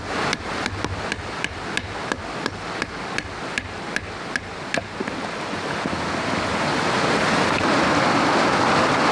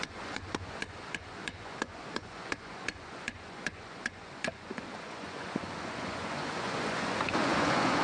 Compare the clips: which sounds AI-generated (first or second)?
second